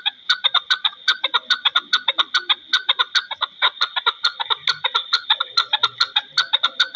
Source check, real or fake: real